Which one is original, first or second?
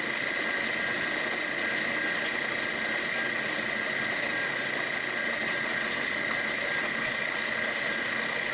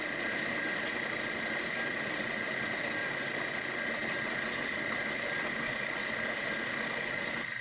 first